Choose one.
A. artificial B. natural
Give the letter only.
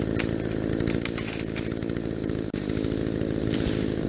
B